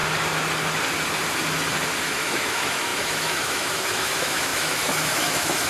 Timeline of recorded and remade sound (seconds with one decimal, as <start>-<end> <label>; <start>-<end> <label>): 0.0-2.0 recorded; 2.0-5.7 remade